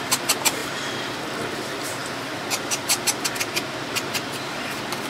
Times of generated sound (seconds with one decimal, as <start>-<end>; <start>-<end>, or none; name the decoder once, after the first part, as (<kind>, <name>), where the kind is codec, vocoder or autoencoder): none